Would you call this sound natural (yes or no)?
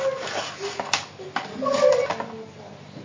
yes